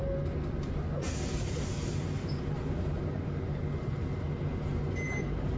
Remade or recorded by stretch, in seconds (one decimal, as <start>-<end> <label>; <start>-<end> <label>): 0.0-5.6 recorded